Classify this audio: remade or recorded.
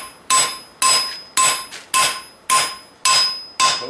recorded